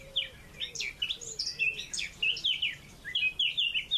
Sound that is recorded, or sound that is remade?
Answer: recorded